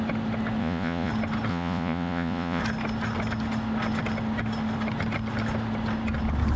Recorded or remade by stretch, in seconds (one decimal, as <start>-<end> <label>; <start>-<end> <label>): 0.0-0.6 recorded; 0.6-1.1 remade; 1.1-1.5 recorded; 1.5-2.6 remade; 2.6-6.6 recorded